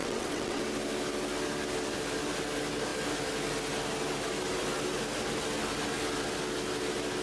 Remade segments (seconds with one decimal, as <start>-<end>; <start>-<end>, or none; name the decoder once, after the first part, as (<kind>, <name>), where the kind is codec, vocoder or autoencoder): 0.0-0.6 (vocoder, WaveNeXt)